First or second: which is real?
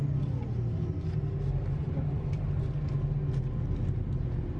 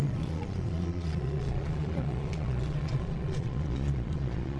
first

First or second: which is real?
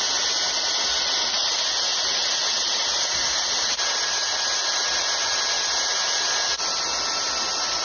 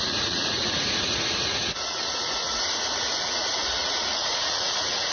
first